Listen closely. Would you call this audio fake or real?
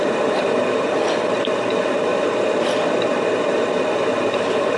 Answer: fake